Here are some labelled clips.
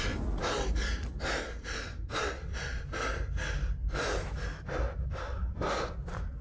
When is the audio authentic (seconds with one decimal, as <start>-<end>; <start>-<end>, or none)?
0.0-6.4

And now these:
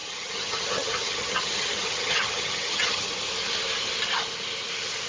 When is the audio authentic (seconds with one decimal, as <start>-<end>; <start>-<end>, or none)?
3.1-5.1

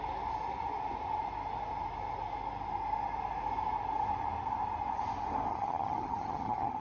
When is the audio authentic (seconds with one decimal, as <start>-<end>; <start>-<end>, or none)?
0.0-5.5